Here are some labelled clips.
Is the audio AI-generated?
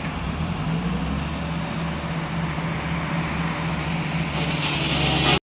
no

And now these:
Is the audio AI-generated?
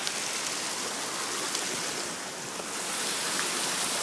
no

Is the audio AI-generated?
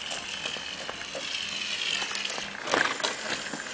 no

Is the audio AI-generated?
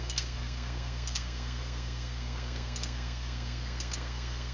yes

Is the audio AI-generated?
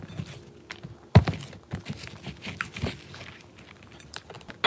no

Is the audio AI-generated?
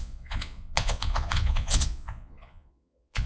yes